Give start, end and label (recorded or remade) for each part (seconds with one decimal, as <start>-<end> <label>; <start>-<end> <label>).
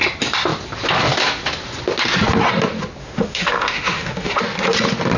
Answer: 0.0-3.0 recorded; 3.0-4.4 remade; 4.4-5.2 recorded